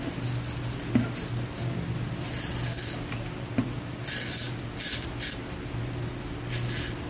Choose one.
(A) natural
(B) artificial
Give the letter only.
A